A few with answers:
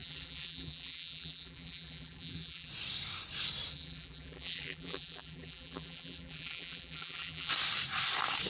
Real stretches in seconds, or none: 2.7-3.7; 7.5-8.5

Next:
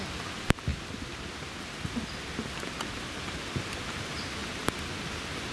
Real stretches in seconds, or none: 0.0-5.5